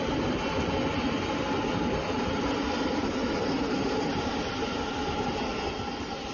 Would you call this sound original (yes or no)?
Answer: yes